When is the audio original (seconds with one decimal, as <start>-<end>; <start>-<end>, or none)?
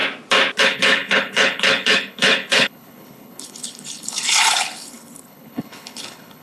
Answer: 0.0-0.6